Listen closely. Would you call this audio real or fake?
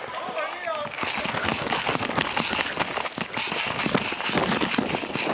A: real